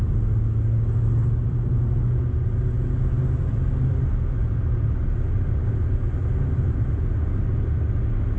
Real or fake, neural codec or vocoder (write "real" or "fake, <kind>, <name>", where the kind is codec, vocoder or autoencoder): real